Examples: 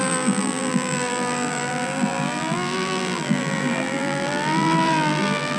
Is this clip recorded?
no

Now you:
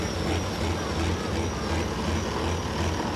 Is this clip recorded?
yes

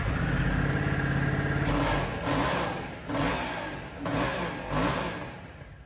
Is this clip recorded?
yes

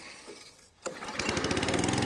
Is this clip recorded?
no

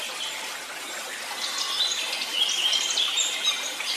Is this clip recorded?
yes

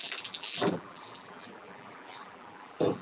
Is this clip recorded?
no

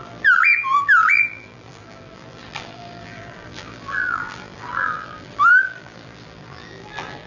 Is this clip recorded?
no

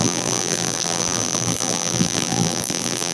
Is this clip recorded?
no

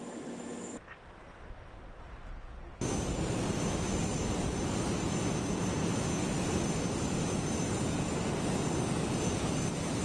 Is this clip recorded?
yes